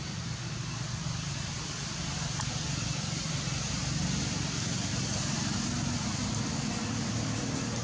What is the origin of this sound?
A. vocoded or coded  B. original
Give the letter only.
B